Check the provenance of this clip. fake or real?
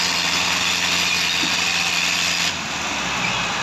real